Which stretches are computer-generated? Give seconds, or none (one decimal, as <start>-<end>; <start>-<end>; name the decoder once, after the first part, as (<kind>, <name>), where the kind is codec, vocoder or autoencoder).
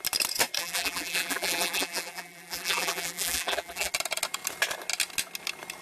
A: 0.6-3.9 (vocoder, BigVGAN v2)